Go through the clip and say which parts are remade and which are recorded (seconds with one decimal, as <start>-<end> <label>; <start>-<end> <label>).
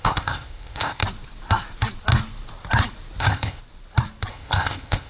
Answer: 0.0-1.0 remade; 1.0-3.2 recorded; 3.2-3.6 remade; 3.6-4.3 recorded; 4.3-5.1 remade